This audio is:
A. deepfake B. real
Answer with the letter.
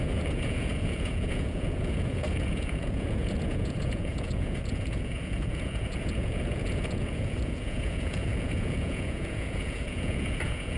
A